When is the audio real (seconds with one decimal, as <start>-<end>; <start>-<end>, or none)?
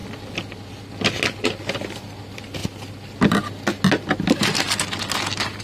0.0-5.6